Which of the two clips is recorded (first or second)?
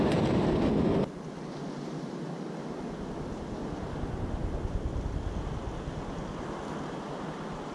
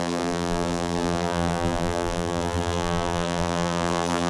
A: first